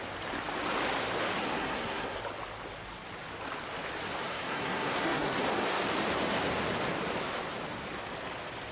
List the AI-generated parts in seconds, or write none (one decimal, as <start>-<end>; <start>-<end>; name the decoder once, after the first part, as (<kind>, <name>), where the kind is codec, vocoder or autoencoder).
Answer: 1.4-2.2 (codec, SNAC); 4.2-5.4